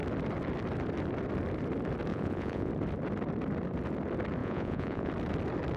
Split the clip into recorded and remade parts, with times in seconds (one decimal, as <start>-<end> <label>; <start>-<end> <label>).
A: 0.0-2.1 recorded; 2.1-2.7 remade; 2.7-4.4 recorded; 4.4-5.1 remade; 5.1-5.8 recorded